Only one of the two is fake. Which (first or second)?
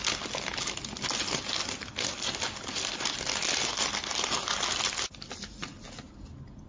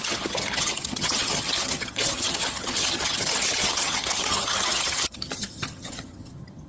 second